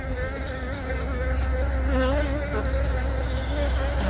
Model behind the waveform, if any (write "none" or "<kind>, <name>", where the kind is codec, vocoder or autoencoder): none